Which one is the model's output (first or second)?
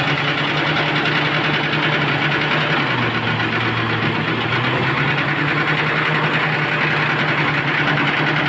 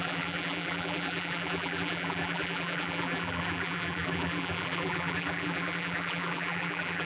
second